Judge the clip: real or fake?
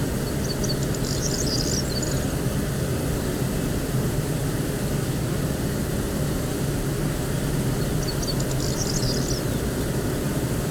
real